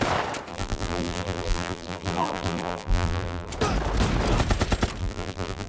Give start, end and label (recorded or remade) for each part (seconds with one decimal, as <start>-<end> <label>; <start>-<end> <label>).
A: 0.0-0.5 recorded; 0.5-3.5 remade; 3.5-5.0 recorded; 5.0-5.7 remade